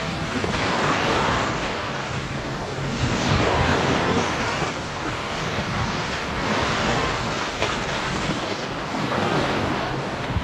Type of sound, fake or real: fake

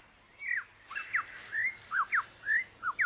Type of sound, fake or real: real